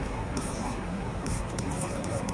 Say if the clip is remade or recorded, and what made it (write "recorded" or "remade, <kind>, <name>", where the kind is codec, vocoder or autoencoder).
remade, codec, SNAC